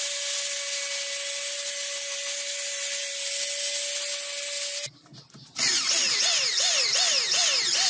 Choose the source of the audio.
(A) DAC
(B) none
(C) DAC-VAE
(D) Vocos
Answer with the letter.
B